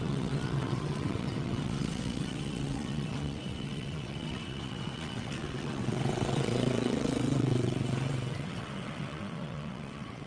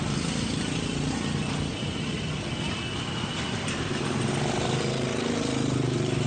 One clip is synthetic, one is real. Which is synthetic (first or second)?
first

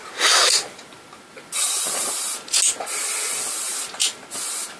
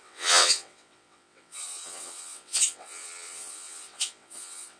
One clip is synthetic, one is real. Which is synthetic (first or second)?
second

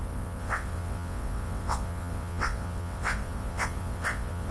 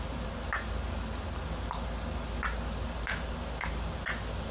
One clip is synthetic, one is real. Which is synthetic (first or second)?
first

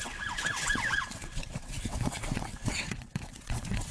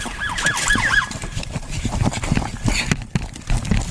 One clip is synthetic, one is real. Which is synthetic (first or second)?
first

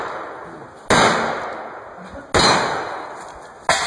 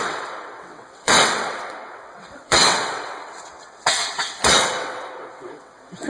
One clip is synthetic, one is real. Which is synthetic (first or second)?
second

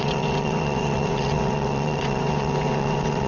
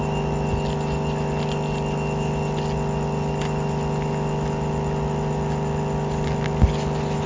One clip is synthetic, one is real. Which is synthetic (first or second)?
first